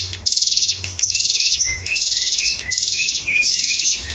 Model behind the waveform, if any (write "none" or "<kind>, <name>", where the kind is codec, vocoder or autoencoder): autoencoder, DAC-VAE